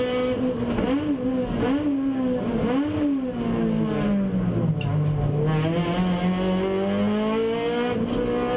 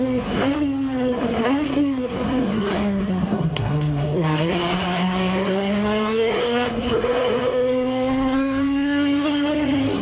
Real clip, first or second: first